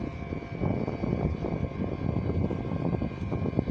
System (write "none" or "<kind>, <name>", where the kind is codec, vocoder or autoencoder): none